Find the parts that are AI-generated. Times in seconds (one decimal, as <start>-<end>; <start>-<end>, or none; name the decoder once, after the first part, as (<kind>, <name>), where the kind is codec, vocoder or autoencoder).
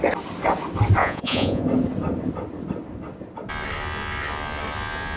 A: 1.0-1.6 (vocoder, Vocos)